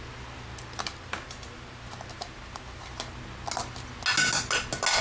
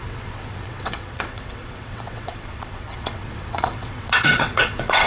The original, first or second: first